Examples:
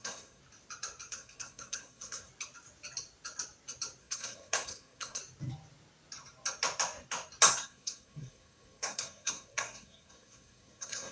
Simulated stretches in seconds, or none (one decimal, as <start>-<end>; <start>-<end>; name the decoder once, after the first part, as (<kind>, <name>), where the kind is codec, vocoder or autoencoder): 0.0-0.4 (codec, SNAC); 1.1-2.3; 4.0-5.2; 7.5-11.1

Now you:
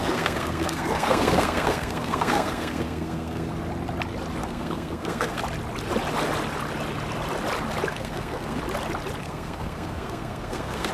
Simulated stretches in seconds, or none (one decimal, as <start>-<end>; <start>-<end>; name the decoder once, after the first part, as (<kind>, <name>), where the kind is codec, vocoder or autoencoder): 0.0-3.5 (codec, SNAC); 4.4-5.4; 7.9-8.6; 9.2-10.9

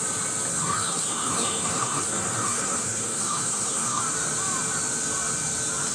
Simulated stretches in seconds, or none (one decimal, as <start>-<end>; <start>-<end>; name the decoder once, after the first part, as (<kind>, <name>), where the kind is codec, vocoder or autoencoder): 0.5-4.0 (codec, SNAC)

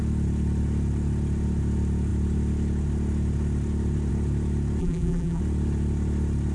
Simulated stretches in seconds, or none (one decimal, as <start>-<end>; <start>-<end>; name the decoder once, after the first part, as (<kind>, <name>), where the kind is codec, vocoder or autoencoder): 4.8-5.4 (vocoder, BigVGAN v2)

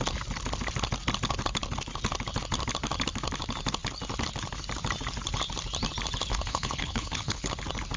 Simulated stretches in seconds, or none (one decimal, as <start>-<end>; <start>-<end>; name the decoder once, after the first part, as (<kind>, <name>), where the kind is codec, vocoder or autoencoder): 6.3-7.5 (codec, HILCodec)

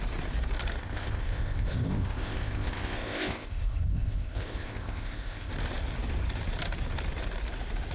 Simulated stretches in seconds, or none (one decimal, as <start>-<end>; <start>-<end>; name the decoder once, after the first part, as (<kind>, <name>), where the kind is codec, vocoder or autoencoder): 0.8-5.5 (codec, ZipCodec)

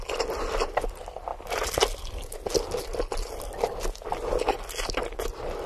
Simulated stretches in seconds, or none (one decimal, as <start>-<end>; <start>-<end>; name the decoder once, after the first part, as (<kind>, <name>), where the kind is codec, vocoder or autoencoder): none